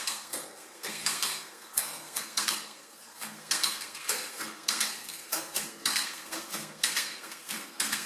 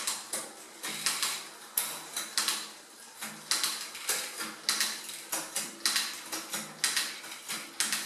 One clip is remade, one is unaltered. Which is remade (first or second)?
first